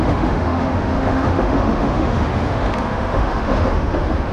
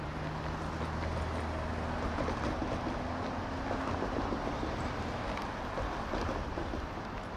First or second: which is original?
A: second